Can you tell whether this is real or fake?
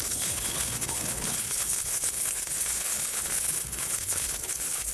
fake